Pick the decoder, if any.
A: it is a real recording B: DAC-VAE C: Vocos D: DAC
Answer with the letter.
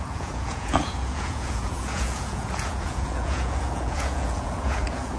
C